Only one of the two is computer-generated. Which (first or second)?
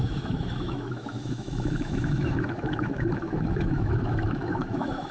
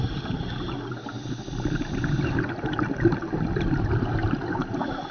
first